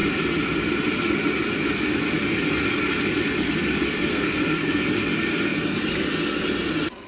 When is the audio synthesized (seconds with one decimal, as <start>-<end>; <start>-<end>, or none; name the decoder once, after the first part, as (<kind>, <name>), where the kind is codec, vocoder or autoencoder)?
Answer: 4.1-4.8 (codec, SNAC)